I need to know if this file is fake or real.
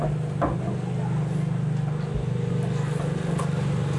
real